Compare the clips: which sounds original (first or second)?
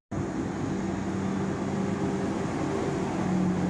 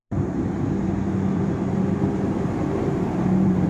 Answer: first